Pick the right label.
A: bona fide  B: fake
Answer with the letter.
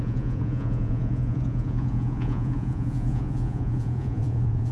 B